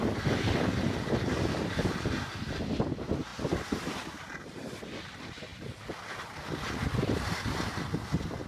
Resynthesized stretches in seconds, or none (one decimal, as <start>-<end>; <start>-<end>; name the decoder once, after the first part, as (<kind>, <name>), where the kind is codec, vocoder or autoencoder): none